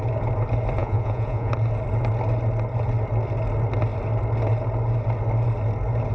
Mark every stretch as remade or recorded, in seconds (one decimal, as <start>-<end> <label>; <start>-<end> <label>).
0.0-0.8 recorded; 0.8-1.5 remade; 1.5-6.1 recorded